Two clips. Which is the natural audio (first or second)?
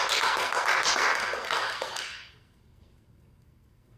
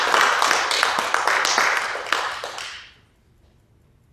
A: second